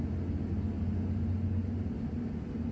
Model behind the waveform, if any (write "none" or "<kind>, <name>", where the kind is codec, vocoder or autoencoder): none